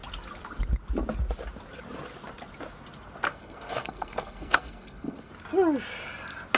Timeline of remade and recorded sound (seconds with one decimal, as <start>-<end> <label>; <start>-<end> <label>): 0.0-3.3 recorded; 3.3-5.3 remade; 5.3-6.6 recorded